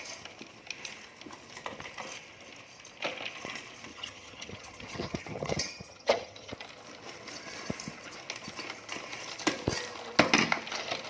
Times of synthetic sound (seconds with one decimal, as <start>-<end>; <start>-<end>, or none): 3.9-6.5